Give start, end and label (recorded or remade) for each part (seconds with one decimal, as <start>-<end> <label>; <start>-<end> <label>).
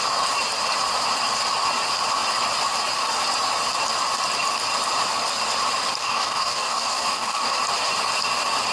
0.0-6.0 recorded; 6.0-7.6 remade; 7.6-8.7 recorded